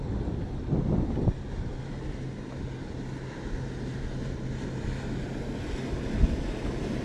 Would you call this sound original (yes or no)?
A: yes